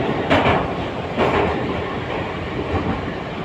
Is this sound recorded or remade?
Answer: recorded